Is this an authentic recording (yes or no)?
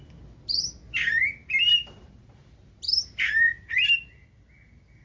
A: yes